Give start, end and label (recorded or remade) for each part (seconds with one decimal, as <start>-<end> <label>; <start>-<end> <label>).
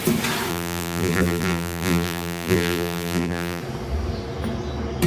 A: 0.0-0.5 recorded; 0.5-3.6 remade; 3.6-5.1 recorded